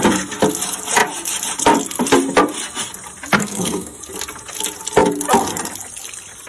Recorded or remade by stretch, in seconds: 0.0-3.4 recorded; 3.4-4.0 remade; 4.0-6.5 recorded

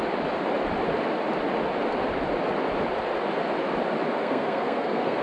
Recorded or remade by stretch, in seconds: 0.0-4.2 recorded; 4.2-5.2 remade

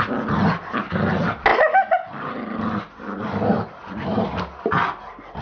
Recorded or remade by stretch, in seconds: 0.0-5.4 recorded

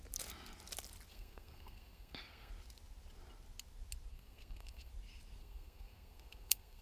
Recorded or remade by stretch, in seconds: 0.0-1.1 recorded; 1.1-2.5 remade; 2.5-4.1 recorded; 4.1-4.9 remade; 4.9-5.4 recorded; 5.4-6.8 remade

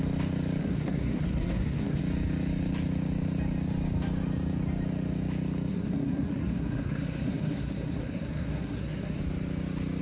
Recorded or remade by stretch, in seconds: 0.0-0.6 recorded; 0.6-2.0 remade; 2.0-5.7 recorded; 5.7-9.2 remade; 9.2-10.0 recorded

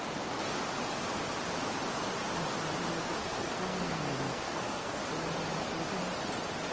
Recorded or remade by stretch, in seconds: 0.0-3.2 recorded; 3.2-5.0 remade; 5.0-6.7 recorded

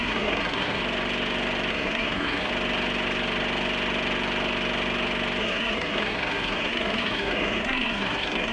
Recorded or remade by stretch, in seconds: 0.0-0.8 remade; 0.8-1.7 recorded; 1.7-2.5 remade; 2.5-5.4 recorded; 5.4-8.5 remade